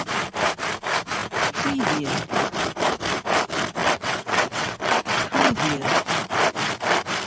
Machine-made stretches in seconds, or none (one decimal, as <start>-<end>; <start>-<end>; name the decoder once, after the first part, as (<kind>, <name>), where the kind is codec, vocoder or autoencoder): 3.8-6.1 (vocoder, WaveNeXt)